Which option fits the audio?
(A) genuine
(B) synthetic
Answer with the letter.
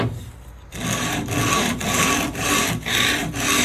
A